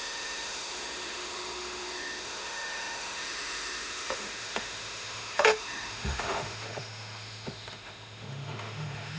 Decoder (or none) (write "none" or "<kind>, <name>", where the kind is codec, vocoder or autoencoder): autoencoder, DAC-VAE